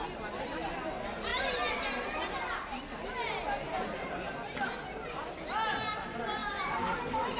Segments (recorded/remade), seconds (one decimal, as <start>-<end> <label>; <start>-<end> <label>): 0.0-7.4 recorded